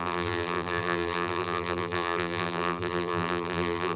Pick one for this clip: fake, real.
fake